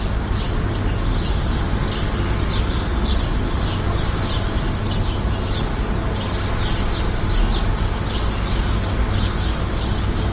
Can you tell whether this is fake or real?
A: real